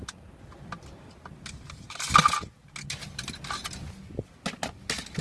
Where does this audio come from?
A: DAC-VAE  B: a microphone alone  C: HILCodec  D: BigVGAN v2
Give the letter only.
B